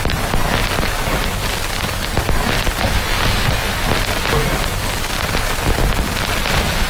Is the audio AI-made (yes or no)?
no